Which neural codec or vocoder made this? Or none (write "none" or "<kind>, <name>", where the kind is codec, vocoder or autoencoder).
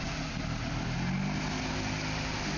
none